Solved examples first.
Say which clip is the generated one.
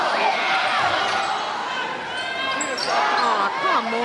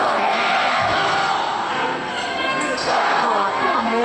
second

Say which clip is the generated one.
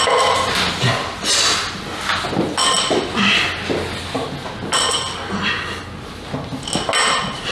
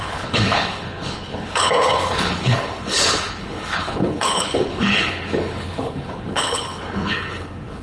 second